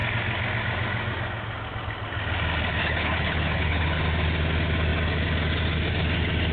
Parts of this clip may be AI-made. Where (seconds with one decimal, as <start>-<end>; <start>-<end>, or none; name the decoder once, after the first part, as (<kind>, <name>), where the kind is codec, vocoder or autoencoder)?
2.8-4.0 (codec, HILCodec)